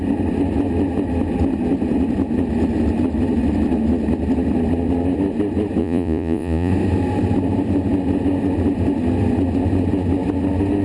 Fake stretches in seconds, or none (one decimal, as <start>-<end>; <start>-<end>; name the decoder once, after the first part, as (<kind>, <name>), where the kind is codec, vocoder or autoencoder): 5.8-6.7 (vocoder, Vocos)